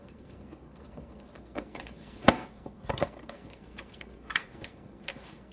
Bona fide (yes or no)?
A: no